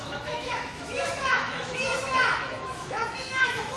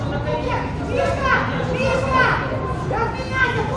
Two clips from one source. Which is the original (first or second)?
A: second